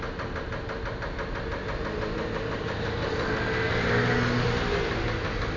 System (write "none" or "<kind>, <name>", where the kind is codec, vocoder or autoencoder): none